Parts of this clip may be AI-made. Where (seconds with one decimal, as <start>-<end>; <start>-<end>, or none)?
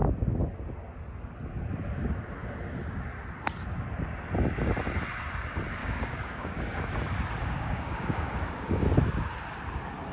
5.8-8.8